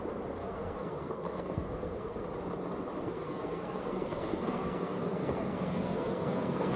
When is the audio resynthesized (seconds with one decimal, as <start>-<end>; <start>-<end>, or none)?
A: 0.4-2.2; 3.0-6.8